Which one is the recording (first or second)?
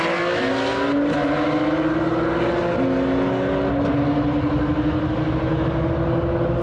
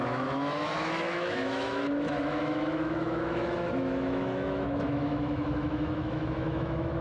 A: first